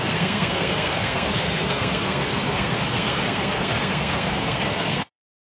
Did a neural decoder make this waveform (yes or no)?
yes